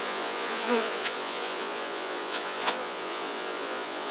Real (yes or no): no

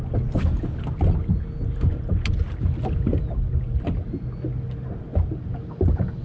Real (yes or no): yes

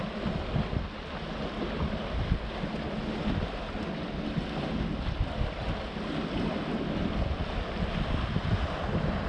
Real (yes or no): yes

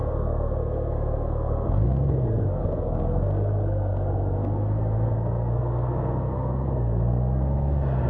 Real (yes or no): no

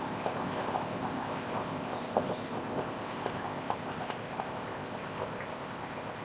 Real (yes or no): no